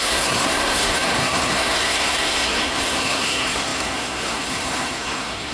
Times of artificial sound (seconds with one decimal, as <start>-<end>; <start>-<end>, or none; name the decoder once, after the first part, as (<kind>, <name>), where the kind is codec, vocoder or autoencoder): 0.0-5.5 (codec, SNAC)